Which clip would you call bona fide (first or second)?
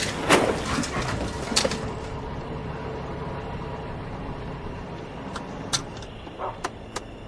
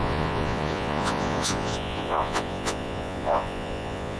first